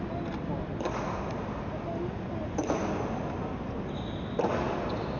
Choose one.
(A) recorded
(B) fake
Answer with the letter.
A